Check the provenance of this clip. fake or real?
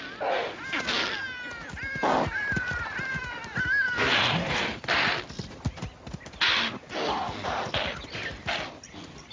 real